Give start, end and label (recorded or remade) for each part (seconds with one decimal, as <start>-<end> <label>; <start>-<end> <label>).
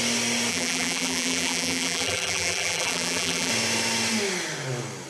0.0-0.5 recorded; 0.5-3.5 remade; 3.5-5.1 recorded